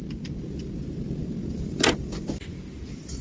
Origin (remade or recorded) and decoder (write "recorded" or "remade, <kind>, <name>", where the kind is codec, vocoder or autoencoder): remade, vocoder, BigVGAN v2